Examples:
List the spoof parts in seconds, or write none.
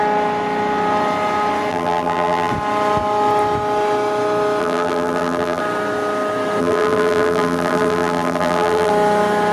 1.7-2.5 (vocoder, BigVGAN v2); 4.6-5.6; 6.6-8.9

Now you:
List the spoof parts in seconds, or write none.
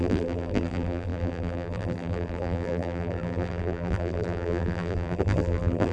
0.0-5.9 (vocoder, BigVGAN v2)